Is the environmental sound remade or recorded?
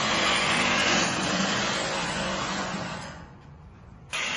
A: remade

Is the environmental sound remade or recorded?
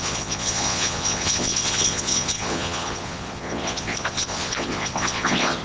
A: remade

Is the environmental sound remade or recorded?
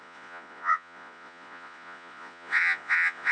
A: remade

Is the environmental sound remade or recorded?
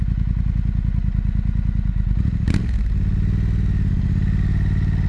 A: recorded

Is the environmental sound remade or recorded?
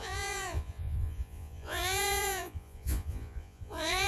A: remade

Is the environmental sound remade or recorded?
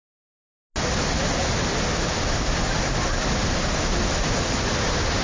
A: recorded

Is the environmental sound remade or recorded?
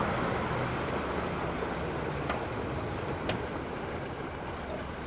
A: recorded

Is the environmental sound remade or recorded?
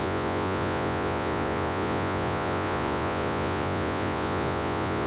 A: remade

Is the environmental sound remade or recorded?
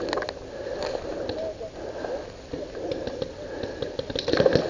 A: recorded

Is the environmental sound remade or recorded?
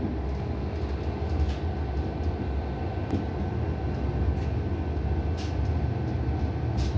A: recorded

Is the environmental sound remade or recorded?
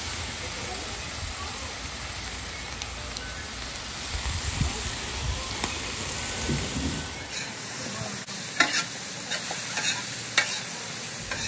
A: recorded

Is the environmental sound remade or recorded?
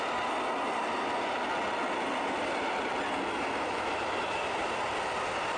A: recorded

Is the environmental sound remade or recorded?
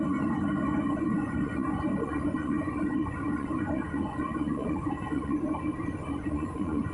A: remade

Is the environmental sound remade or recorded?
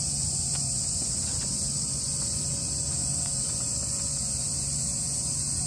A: remade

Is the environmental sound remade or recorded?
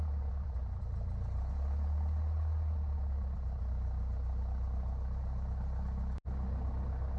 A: recorded